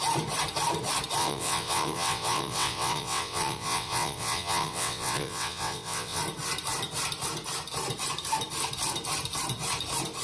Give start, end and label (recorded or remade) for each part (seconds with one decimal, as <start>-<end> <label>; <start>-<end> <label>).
0.0-1.2 recorded; 1.2-6.2 remade; 6.2-10.2 recorded